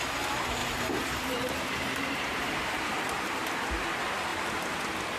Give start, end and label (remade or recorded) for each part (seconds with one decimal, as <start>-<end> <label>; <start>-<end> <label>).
0.0-0.6 recorded; 0.6-3.7 remade; 3.7-4.3 recorded; 4.3-4.8 remade; 4.8-5.2 recorded